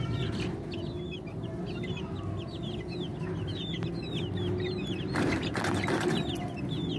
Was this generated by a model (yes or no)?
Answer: no